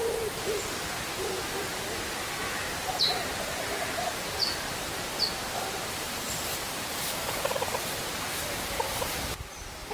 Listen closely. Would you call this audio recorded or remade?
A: remade